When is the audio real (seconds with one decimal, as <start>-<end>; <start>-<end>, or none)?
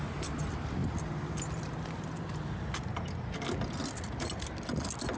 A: 0.0-5.2